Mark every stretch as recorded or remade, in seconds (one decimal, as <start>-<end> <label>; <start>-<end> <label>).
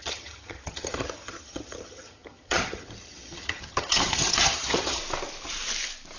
0.0-5.0 remade; 5.0-6.2 recorded